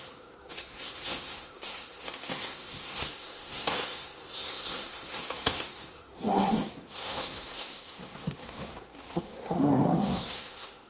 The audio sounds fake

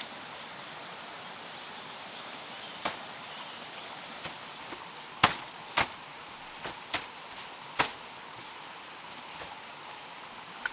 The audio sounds real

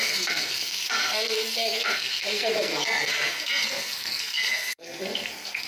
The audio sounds fake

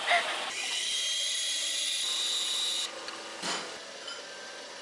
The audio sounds real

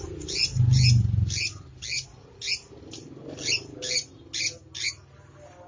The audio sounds real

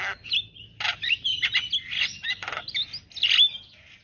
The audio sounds real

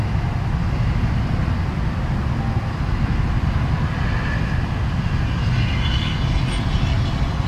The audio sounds real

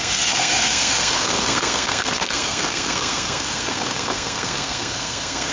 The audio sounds fake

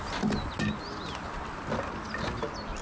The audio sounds real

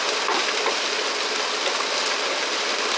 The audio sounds real